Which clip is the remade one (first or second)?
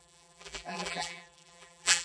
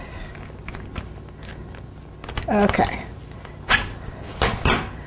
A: first